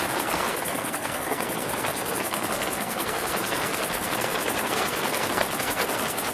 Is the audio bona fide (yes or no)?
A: no